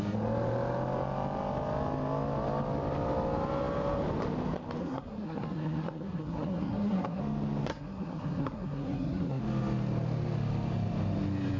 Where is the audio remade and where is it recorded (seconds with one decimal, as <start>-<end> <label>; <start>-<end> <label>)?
0.0-4.8 recorded; 4.8-7.2 remade; 7.2-7.7 recorded; 7.7-9.4 remade; 9.4-11.6 recorded